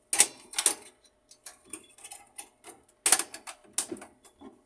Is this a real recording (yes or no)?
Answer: yes